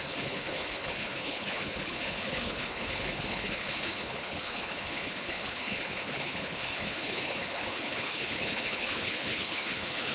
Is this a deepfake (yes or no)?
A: yes